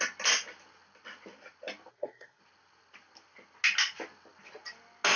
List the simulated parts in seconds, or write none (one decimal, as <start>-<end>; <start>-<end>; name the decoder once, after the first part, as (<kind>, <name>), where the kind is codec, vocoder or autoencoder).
1.9-2.4 (codec, SNAC)

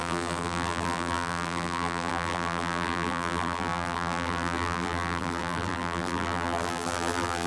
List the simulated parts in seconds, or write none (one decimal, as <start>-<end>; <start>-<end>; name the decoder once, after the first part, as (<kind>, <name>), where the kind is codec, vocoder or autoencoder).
0.0-7.5 (vocoder, BigVGAN v2)